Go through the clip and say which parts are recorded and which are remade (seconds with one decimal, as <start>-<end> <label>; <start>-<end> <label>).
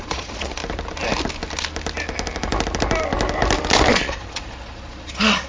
0.0-0.6 remade; 0.6-3.9 recorded; 3.9-5.5 remade